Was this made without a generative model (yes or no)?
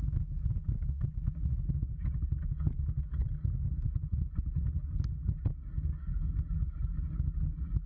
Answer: yes